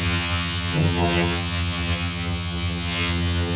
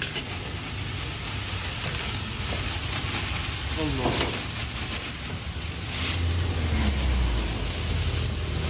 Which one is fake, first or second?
first